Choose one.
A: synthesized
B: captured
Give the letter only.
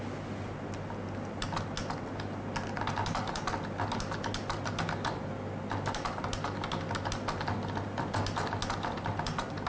B